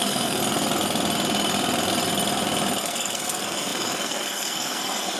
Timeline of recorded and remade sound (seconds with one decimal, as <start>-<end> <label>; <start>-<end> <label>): 0.0-0.4 remade; 0.4-2.8 recorded; 2.8-5.2 remade